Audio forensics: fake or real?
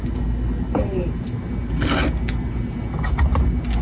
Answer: real